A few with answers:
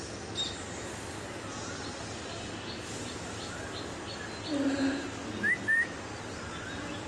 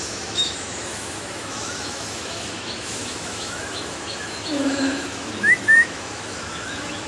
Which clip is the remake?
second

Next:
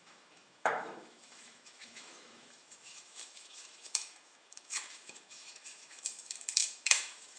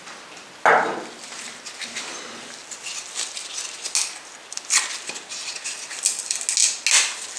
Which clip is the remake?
first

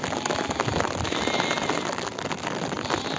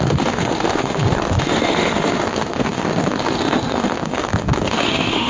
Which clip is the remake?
second